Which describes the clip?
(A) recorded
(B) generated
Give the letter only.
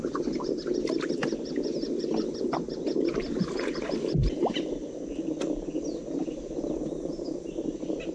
A